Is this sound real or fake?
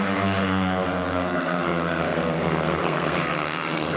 fake